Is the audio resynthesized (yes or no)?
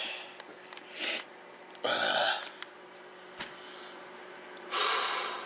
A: no